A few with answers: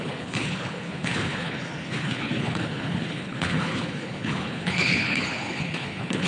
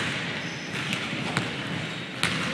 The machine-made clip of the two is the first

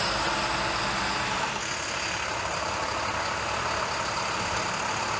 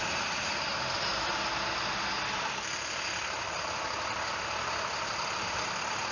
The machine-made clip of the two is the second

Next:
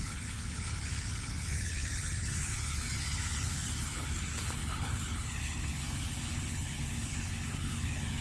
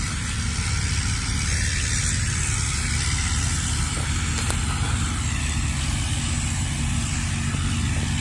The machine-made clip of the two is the first